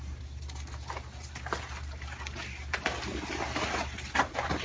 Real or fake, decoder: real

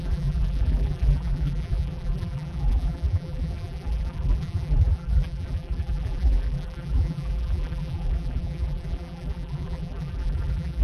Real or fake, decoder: fake, vocoder, BigVGAN v2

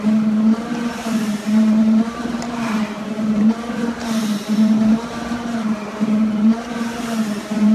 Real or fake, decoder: fake, vocoder, BigVGAN v2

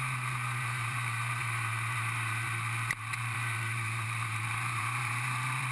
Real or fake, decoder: fake, vocoder, BigVGAN v2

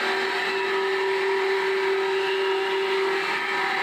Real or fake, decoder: real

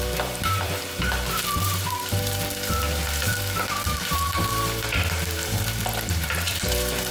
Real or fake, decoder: fake, vocoder, BigVGAN v2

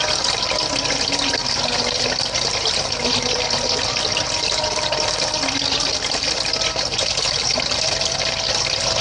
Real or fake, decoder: fake, vocoder, BigVGAN v2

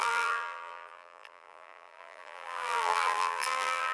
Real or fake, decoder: fake, vocoder, BigVGAN v2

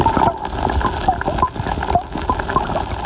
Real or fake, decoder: real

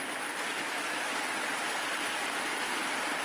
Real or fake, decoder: real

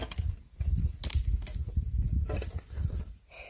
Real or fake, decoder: real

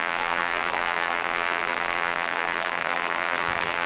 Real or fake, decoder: fake, vocoder, BigVGAN v2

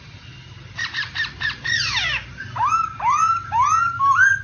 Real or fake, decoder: fake, vocoder, BigVGAN v2